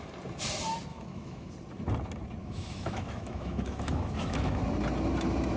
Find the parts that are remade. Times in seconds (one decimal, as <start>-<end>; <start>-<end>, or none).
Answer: 0.9-1.5; 2.4-4.6